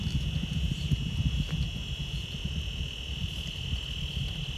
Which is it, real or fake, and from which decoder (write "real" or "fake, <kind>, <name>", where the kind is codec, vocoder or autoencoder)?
real